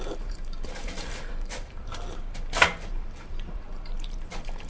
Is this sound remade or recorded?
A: remade